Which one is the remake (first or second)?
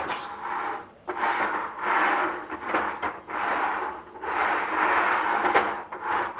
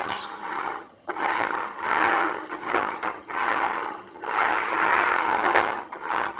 second